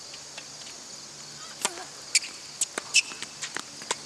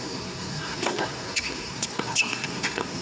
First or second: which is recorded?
first